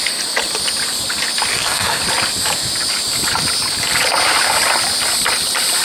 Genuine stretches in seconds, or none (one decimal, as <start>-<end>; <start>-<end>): 0.0-1.5; 2.0-5.8